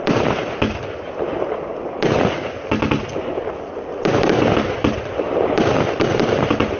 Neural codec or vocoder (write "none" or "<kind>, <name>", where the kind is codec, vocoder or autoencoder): none